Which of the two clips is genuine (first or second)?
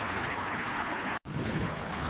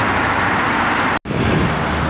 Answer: second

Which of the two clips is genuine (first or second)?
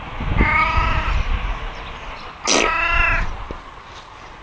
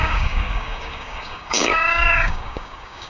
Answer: first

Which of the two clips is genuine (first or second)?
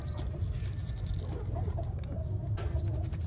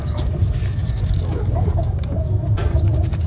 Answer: first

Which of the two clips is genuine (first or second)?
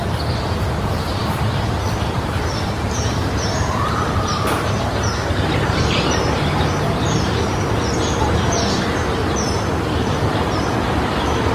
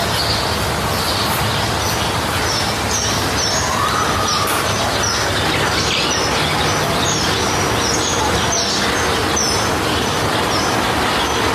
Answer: second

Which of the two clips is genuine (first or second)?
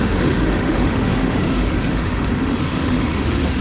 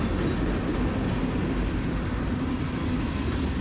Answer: second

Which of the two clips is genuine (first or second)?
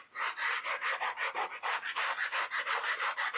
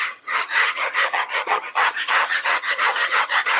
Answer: first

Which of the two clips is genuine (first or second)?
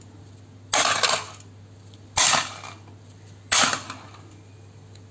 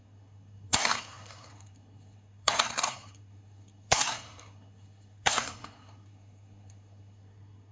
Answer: first